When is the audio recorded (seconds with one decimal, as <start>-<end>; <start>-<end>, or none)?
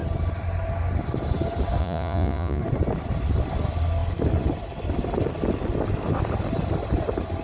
0.0-1.8; 2.6-7.4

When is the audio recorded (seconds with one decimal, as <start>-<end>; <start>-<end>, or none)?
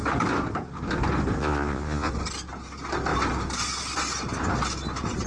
0.0-1.4; 2.1-5.3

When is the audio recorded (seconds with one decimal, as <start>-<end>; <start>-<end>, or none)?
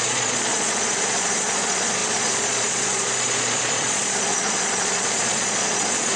none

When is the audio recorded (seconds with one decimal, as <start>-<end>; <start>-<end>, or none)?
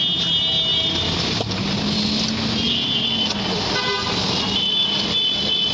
0.0-5.7